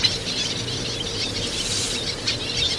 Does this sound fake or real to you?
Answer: real